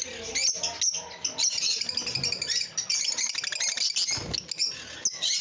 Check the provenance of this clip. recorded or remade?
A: recorded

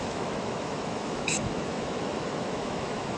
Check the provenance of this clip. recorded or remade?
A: remade